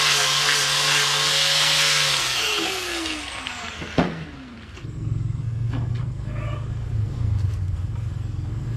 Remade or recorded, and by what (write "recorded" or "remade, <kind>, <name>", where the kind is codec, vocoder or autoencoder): remade, codec, SNAC